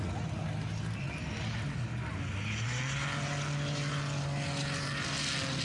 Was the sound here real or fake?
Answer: real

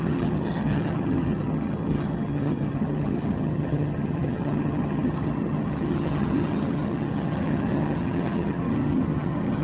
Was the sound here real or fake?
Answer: fake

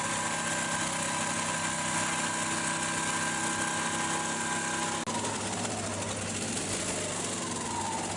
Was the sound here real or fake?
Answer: real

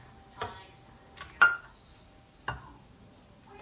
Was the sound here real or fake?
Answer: real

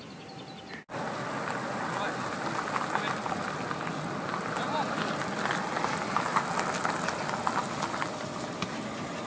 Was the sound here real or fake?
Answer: real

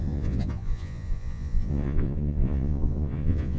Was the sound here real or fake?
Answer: fake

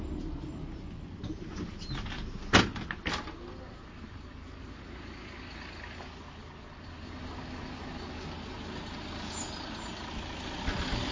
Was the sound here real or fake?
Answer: real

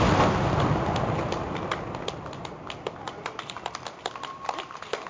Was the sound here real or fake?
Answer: real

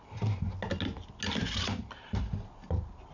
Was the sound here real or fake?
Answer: real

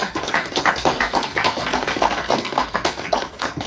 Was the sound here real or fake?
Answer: fake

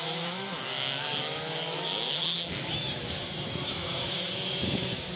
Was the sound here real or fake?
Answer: fake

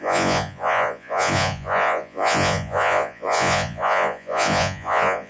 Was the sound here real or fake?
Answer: fake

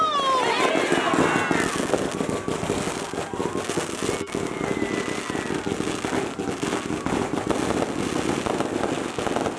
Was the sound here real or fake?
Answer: real